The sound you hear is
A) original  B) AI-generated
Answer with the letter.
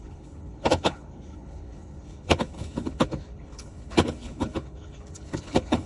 B